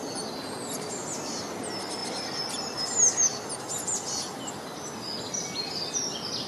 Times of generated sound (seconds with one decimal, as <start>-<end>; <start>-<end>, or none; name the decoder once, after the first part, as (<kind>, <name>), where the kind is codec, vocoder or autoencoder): none